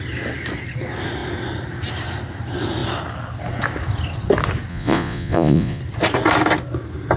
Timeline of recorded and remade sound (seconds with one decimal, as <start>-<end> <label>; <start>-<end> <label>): 0.0-4.7 recorded; 4.7-5.8 remade; 5.8-7.2 recorded